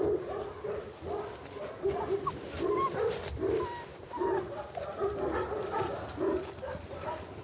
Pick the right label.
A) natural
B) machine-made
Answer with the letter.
A